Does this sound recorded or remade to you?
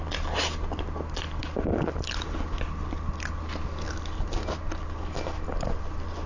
recorded